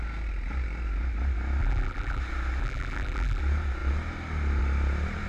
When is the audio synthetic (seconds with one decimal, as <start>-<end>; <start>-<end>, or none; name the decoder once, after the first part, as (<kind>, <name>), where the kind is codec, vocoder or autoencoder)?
1.6-2.2 (vocoder, BigVGAN v2); 2.6-3.4